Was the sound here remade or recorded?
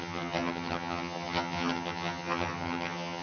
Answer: remade